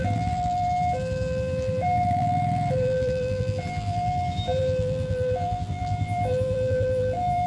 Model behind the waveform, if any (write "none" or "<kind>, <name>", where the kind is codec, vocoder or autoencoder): vocoder, BigVGAN v2